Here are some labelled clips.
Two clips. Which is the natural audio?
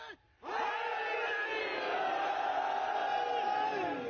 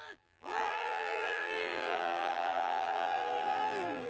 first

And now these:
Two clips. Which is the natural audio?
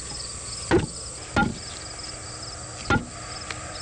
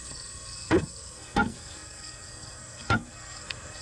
first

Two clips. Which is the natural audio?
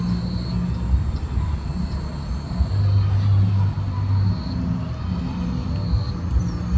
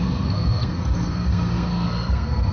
first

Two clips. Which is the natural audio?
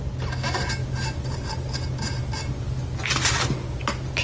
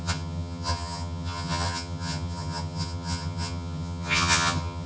first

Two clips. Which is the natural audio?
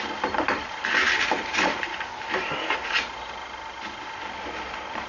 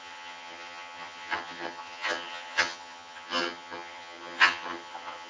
first